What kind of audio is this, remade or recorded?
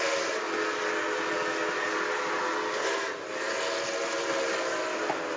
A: recorded